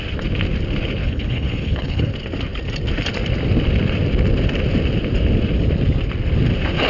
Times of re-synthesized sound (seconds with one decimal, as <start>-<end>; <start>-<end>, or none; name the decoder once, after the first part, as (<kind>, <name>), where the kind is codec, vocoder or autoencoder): 1.0-2.1 (codec, HILCodec)